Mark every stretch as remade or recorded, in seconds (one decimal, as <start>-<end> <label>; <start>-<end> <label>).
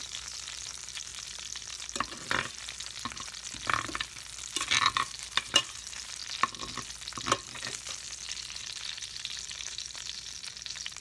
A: 0.0-1.1 remade; 1.1-4.8 recorded; 4.8-6.2 remade; 6.2-8.3 recorded; 8.3-11.0 remade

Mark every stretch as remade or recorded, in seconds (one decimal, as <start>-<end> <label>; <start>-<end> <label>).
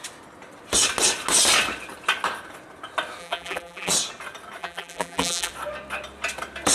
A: 0.0-3.2 recorded; 3.2-3.9 remade; 3.9-4.6 recorded; 4.6-5.5 remade; 5.5-6.7 recorded